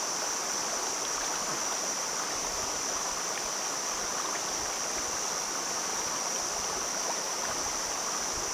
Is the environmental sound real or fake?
real